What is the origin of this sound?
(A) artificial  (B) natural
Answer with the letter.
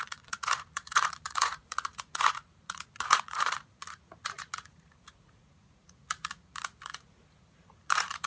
A